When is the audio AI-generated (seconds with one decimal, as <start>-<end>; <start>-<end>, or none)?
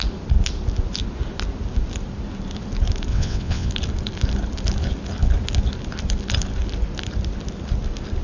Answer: 3.1-3.7